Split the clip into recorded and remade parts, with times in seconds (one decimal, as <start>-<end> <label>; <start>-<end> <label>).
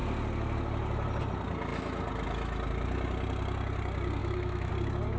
0.0-4.2 recorded; 4.2-4.7 remade; 4.7-5.2 recorded